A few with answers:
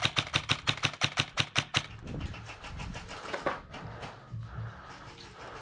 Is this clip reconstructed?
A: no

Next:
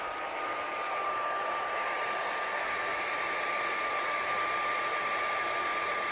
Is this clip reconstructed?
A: yes